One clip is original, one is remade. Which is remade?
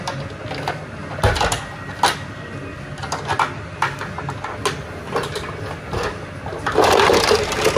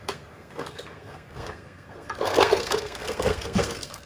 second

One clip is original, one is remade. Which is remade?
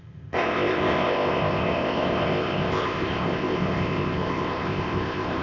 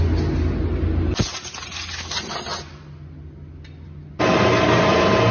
first